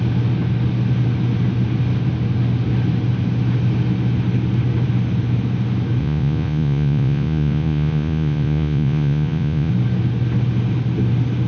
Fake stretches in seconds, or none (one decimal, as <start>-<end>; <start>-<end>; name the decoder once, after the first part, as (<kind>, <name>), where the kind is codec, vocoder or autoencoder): 6.0-9.7 (vocoder, Vocos)

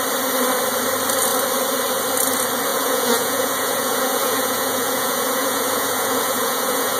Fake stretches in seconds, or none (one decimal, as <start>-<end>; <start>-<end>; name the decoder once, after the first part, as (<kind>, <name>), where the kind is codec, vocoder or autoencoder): 2.7-7.0 (vocoder, Vocos)

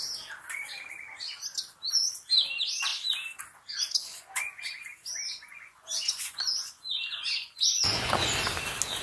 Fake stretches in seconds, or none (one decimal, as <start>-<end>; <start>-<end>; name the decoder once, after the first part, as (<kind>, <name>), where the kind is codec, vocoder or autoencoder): 4.1-8.3 (vocoder, Vocos)

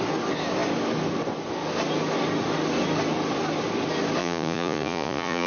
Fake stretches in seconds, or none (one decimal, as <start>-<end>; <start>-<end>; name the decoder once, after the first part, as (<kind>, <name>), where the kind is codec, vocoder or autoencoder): 4.2-5.5 (vocoder, Vocos)

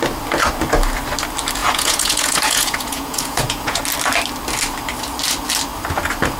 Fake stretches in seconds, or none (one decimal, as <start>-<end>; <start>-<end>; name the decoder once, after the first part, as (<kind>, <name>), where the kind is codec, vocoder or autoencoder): 1.6-3.8 (vocoder, Vocos)

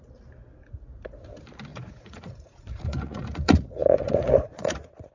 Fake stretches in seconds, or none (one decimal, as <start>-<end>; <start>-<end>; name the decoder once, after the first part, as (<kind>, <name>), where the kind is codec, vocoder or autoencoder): 1.7-5.1 (vocoder, Vocos)